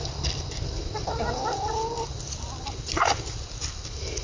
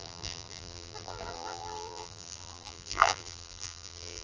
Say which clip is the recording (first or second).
first